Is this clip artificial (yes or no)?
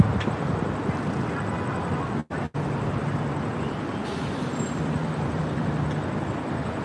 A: no